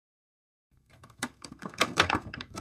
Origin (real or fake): fake